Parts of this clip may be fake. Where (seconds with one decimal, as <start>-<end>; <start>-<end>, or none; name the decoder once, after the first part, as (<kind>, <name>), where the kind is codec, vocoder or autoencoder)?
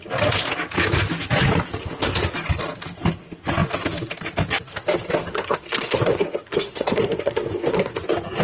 1.8-2.3 (codec, SNAC); 5.3-8.0